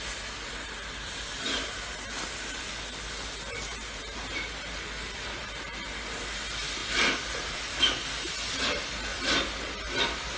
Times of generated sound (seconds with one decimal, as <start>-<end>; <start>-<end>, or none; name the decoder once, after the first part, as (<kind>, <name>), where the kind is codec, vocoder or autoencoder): 0.4-2.6 (vocoder, BigVGAN v2); 6.8-7.8